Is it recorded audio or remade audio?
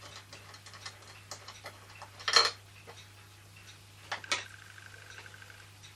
recorded